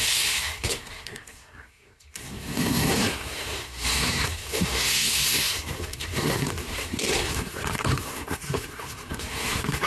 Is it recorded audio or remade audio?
remade